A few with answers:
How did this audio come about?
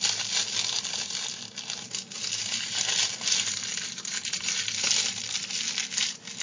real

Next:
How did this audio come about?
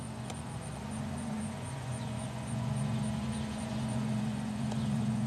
fake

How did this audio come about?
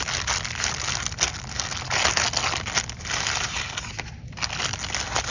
real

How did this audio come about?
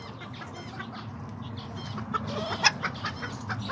real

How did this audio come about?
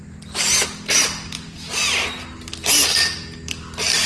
real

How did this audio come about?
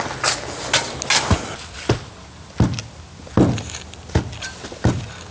real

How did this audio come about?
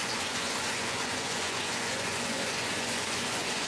fake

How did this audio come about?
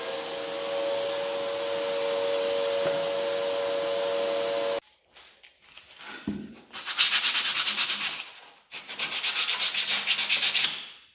real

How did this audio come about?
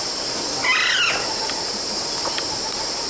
real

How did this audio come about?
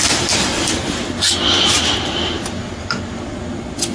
real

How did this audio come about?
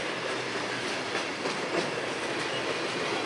real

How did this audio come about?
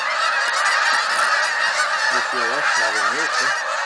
real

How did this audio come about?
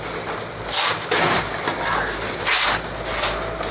real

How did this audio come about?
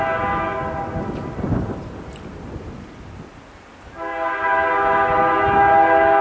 real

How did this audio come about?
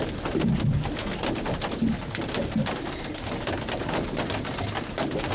real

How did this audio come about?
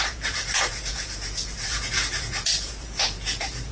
fake